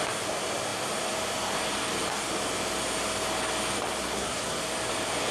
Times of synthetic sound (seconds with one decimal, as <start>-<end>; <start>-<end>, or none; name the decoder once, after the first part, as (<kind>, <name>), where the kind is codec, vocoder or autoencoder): 4.0-4.6 (codec, SNAC)

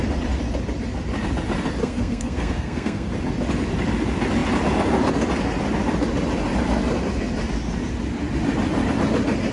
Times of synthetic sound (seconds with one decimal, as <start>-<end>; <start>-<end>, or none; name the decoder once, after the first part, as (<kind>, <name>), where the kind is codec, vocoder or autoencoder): 1.8-3.1 (codec, SNAC)

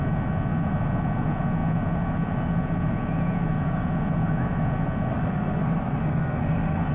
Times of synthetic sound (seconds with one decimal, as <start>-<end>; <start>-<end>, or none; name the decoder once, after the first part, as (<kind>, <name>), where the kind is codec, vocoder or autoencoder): 5.1-6.9 (codec, SNAC)

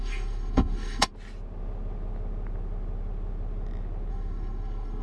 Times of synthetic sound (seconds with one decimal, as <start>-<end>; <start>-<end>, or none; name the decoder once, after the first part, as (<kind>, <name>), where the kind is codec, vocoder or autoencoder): 0.0-1.1 (codec, SNAC); 4.1-5.0